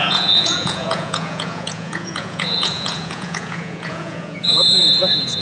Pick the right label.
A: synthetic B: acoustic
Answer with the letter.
A